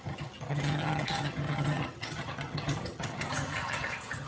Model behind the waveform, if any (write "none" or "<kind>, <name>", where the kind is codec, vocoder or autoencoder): vocoder, HiFi-GAN